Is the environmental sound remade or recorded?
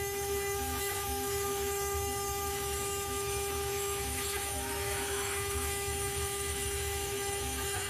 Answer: remade